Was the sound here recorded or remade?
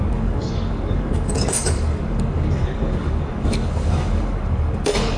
remade